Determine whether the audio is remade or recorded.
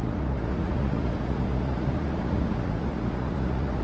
remade